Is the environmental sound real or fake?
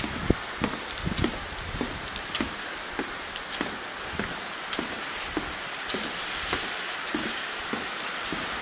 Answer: real